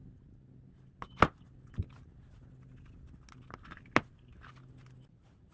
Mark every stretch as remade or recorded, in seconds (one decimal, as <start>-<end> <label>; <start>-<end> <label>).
0.0-5.5 recorded